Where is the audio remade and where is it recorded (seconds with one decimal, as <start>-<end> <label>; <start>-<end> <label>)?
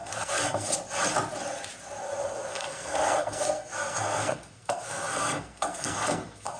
0.0-0.7 remade; 0.7-2.5 recorded; 2.5-6.6 remade